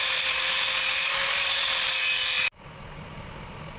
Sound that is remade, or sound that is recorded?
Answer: recorded